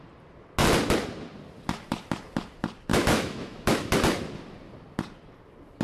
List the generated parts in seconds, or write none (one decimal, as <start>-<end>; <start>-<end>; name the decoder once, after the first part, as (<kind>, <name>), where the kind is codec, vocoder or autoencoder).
2.9-3.9 (autoencoder, DAC-VAE)